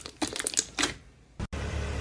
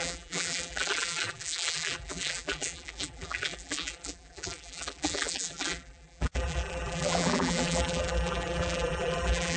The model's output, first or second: second